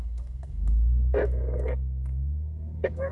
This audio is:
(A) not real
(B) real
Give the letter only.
A